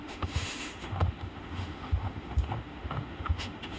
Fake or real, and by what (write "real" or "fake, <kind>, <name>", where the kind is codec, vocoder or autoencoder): fake, autoencoder, DAC-VAE